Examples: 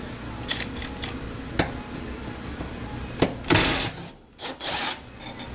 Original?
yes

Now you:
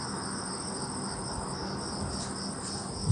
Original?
yes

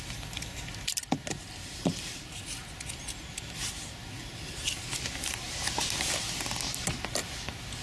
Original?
yes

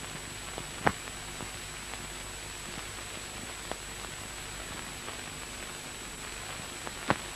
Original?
yes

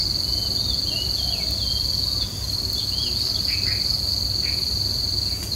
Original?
yes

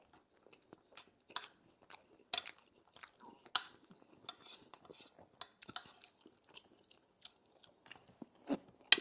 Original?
yes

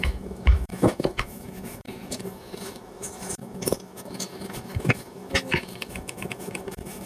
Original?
no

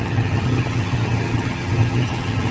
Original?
no